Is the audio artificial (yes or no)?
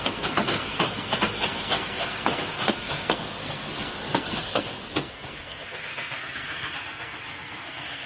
yes